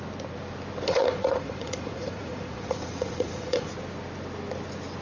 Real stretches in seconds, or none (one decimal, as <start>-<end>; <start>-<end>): 0.0-0.9; 3.7-5.0